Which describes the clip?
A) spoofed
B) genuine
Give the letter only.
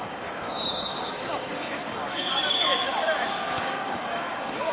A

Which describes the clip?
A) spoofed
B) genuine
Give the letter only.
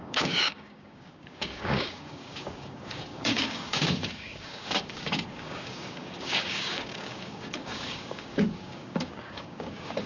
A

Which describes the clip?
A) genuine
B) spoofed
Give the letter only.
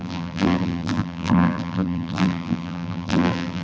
B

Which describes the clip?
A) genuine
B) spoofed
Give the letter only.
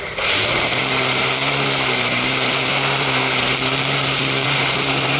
B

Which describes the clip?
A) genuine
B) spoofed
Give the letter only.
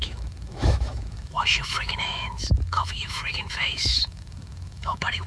B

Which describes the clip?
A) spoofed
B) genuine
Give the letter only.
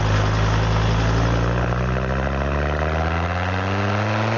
B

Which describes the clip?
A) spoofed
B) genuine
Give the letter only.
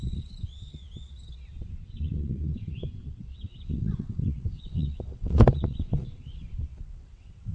A